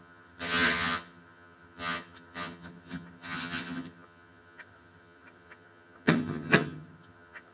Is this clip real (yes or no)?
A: no